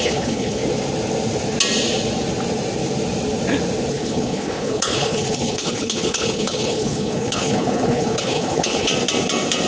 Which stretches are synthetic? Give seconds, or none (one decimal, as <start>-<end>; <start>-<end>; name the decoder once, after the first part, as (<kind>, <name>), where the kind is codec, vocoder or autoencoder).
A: 0.0-0.6 (codec, HILCodec); 3.9-8.9